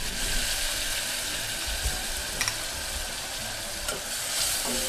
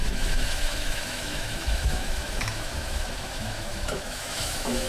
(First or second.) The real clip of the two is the first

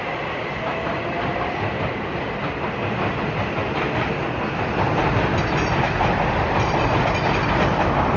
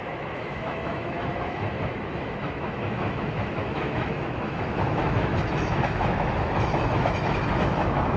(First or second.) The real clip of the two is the first